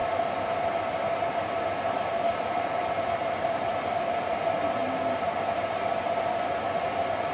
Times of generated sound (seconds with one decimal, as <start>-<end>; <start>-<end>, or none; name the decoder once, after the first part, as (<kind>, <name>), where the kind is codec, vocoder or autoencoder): none